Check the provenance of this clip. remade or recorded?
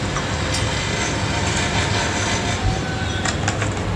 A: recorded